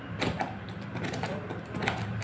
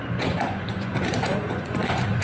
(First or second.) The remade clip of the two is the second